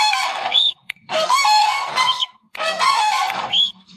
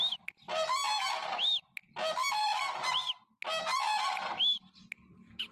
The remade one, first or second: first